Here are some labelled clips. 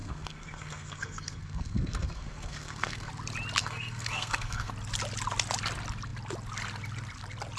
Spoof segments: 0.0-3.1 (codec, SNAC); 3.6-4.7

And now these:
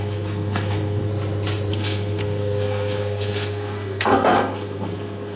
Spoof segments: 0.0-1.1 (codec, SNAC); 1.7-5.4

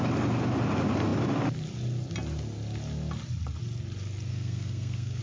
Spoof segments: 4.3-5.2 (codec, SNAC)

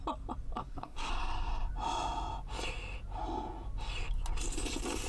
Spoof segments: 0.6-1.1 (codec, SNAC)

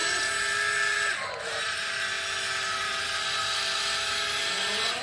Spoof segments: none

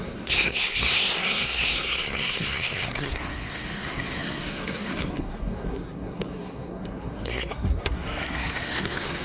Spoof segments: 0.0-9.2 (codec, SNAC)